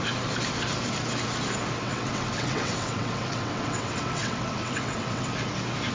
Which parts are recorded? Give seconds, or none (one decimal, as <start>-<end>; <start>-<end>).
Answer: 0.0-1.8; 5.3-5.9